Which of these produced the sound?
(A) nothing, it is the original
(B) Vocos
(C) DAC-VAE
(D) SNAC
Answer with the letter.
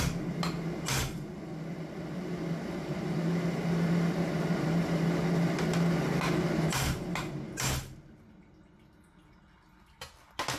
A